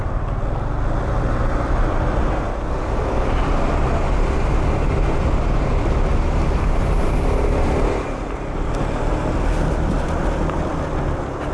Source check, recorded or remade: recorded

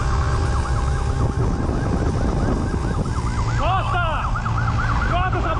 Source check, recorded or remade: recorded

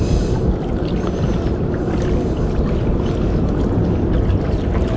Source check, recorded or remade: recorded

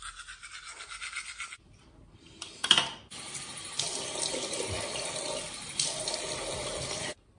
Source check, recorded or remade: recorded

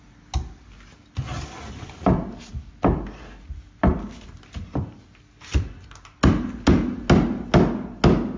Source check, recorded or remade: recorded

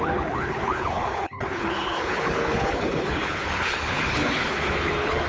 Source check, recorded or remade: remade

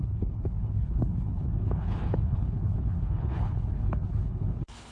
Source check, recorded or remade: remade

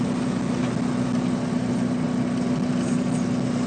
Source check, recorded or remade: recorded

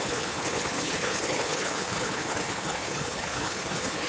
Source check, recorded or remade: remade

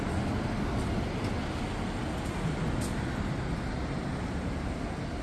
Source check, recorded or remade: recorded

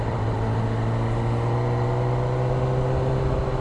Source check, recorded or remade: recorded